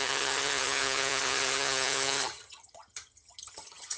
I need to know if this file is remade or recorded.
remade